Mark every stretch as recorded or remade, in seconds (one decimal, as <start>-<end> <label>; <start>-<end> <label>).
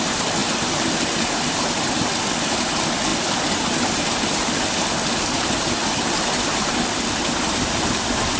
0.0-8.4 recorded